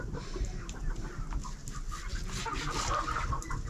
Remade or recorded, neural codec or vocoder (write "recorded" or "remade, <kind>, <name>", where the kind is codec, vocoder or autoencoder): recorded